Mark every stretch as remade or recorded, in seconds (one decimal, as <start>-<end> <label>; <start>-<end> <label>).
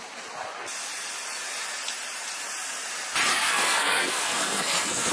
0.0-3.3 recorded; 3.3-5.1 remade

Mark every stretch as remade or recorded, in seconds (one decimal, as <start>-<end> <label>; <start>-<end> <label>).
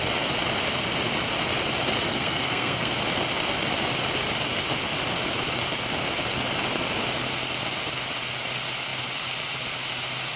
0.0-2.1 recorded; 2.1-2.9 remade; 2.9-10.4 recorded